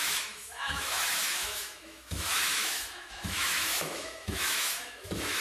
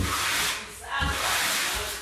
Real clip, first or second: second